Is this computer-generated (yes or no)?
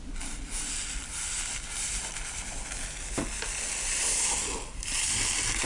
no